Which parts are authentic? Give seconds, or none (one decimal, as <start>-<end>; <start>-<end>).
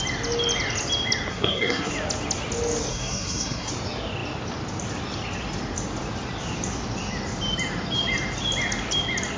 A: 0.0-1.3; 1.9-2.9; 3.7-9.4